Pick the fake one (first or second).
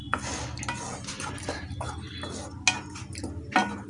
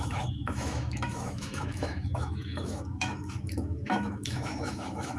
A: second